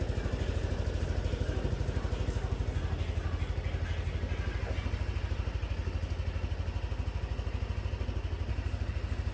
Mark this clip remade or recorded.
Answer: recorded